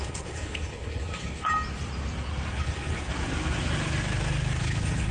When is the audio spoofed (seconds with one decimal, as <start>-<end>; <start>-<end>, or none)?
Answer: 0.0-1.5; 2.5-3.1; 4.6-5.1